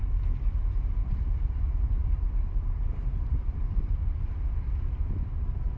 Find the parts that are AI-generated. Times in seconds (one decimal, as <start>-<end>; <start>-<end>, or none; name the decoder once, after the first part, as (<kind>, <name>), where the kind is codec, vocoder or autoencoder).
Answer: 1.0-3.9 (vocoder, BigVGAN v2)